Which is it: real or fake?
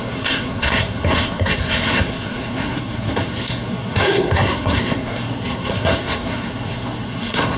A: fake